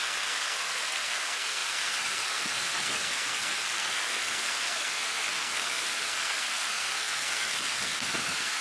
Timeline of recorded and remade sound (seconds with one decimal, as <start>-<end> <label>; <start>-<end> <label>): 0.0-8.6 remade